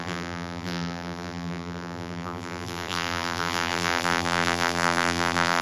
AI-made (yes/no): yes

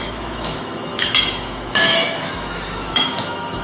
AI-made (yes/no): yes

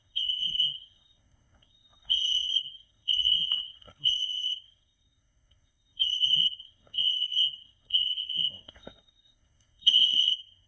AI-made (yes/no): yes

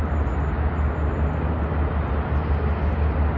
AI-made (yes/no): no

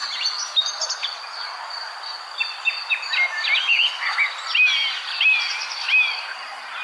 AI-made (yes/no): no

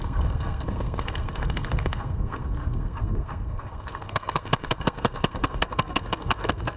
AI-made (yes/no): yes